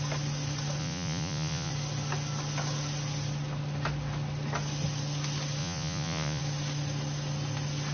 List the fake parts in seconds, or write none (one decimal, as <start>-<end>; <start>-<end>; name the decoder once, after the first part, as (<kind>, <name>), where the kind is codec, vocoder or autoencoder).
0.8-1.7 (vocoder, Vocos); 5.6-6.4